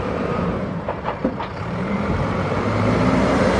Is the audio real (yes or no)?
no